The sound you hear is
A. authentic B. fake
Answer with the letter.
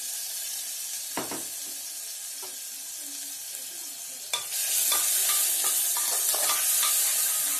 A